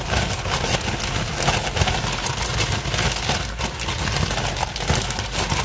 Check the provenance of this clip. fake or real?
real